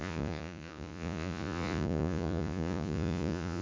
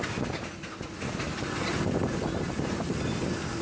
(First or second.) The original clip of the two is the second